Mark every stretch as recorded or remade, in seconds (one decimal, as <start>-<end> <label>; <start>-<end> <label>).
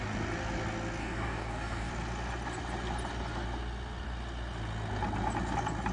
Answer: 0.0-1.0 recorded; 1.0-1.9 remade; 1.9-5.9 recorded